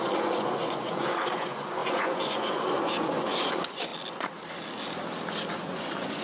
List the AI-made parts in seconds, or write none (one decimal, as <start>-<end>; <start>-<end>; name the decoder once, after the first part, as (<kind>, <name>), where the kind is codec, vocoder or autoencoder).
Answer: 0.0-3.9 (vocoder, Vocos); 5.5-6.2